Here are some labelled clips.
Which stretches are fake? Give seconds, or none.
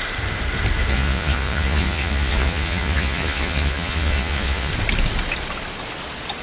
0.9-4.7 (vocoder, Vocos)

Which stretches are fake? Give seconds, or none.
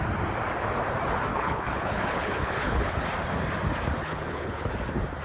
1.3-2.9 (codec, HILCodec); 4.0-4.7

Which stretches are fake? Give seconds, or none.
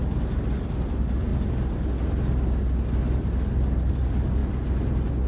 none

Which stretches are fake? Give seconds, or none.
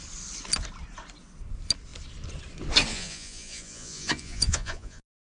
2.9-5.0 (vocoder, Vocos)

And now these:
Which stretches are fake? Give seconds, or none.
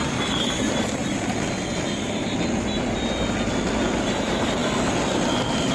0.0-1.0 (vocoder, BigVGAN v2); 4.0-4.6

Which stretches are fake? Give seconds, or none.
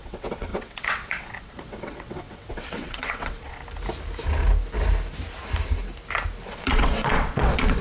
0.0-3.6 (vocoder, WaveNeXt); 6.5-7.8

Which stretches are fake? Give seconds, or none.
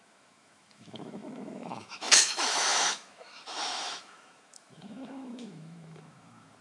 0.0-6.6 (autoencoder, DAC-VAE)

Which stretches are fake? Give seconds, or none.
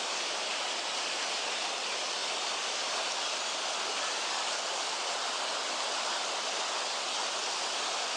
none